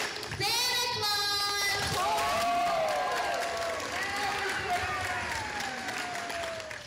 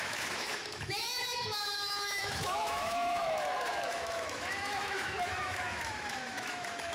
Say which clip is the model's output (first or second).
second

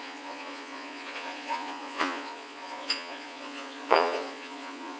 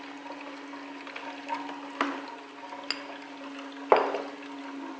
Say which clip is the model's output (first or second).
first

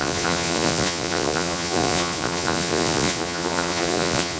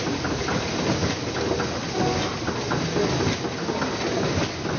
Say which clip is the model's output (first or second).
first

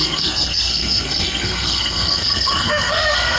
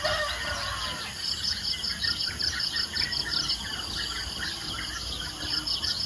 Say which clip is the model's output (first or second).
first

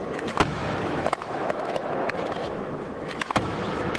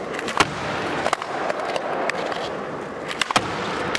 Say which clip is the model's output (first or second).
first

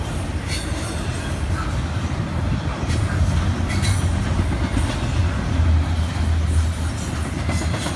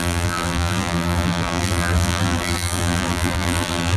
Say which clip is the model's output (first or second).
second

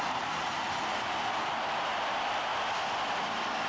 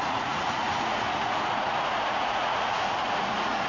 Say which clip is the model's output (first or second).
second